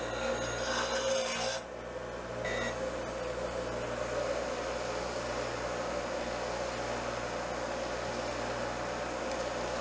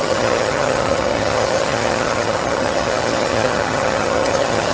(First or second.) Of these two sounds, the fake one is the second